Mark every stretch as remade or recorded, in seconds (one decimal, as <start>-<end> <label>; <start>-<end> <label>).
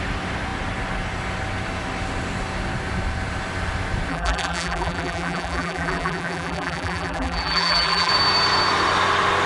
0.0-4.1 recorded; 4.1-8.1 remade; 8.1-9.5 recorded